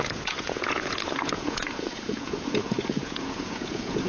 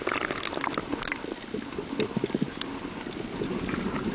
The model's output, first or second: first